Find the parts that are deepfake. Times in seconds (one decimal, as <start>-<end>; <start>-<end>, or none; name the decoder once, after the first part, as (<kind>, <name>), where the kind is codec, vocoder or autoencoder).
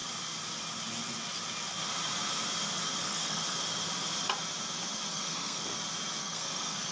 3.0-3.4 (codec, SNAC); 5.1-5.7; 6.2-6.9